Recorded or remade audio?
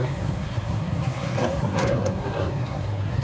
remade